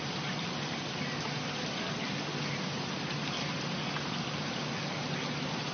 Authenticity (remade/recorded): recorded